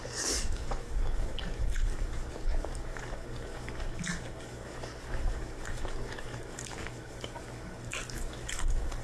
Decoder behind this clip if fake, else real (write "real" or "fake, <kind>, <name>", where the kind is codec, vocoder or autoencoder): fake, codec, DAC